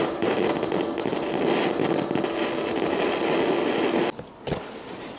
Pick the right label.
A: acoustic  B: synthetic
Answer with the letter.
A